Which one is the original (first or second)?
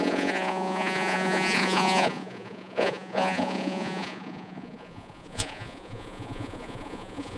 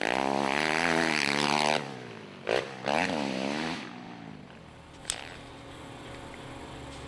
second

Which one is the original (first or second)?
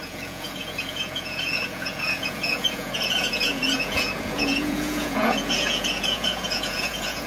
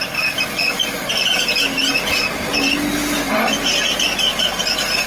second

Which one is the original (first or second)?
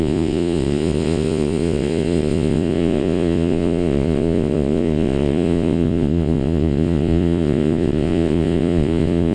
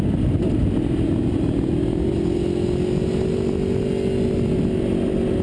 second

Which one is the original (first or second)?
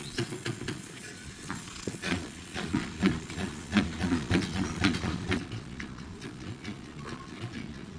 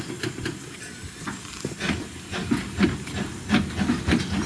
second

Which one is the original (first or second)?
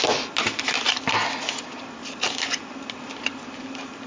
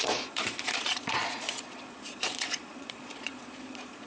first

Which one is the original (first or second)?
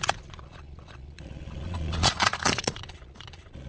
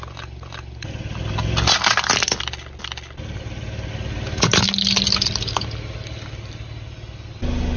second